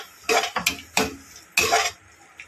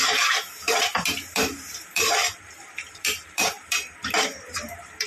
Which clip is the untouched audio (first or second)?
first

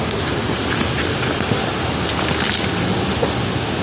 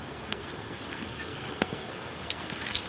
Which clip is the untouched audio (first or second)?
first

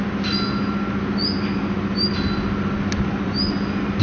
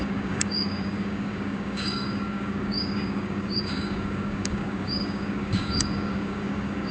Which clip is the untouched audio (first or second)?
first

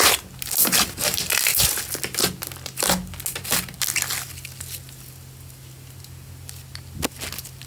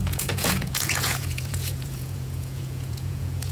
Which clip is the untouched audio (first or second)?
first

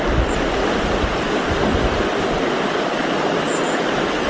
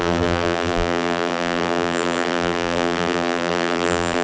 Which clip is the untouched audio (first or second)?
first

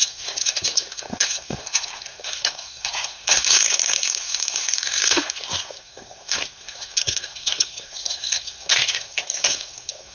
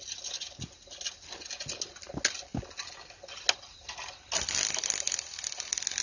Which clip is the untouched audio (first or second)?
second